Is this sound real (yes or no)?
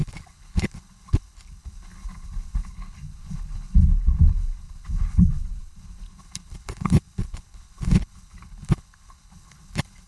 no